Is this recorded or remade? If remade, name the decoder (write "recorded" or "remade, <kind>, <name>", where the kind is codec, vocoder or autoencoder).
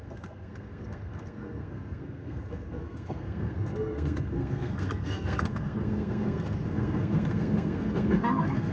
remade, codec, SNAC